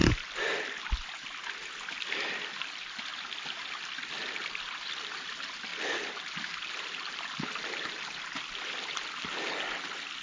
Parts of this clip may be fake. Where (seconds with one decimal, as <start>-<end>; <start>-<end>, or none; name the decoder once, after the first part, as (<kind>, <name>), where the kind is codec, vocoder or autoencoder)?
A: none